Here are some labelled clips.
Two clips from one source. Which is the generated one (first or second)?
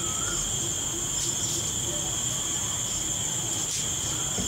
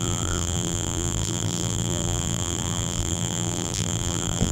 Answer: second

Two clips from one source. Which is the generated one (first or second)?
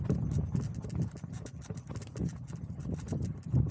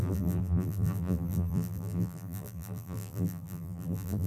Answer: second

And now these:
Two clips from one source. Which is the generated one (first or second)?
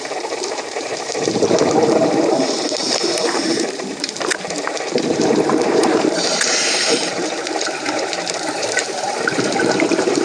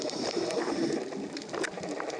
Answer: first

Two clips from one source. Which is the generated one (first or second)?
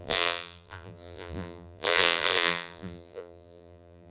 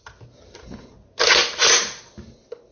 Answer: first